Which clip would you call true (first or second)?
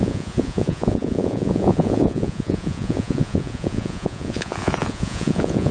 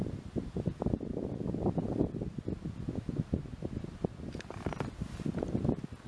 second